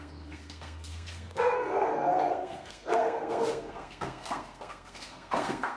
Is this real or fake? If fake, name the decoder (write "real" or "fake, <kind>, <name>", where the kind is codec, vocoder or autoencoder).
fake, codec, SNAC